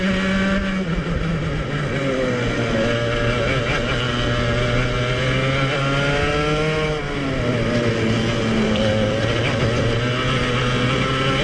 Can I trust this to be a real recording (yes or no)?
yes